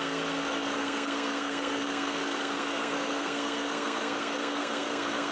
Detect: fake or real fake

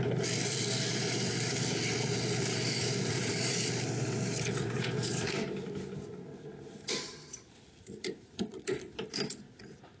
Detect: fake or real fake